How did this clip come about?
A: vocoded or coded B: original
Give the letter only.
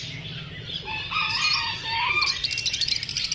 B